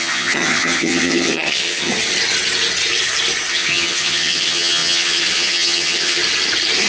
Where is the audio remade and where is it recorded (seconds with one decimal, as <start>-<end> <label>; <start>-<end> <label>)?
0.0-1.9 remade; 1.9-3.5 recorded; 3.5-6.2 remade; 6.2-6.9 recorded